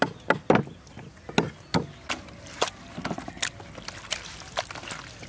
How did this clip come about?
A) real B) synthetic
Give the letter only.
A